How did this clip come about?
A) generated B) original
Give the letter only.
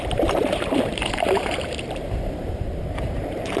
A